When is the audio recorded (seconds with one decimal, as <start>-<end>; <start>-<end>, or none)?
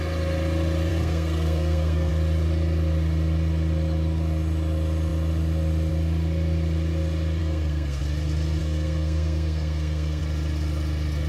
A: 0.0-0.9; 2.1-7.4; 8.0-8.6; 10.2-11.3